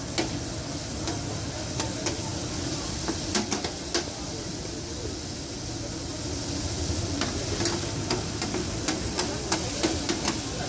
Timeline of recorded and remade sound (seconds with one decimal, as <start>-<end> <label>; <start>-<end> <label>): 0.0-10.7 recorded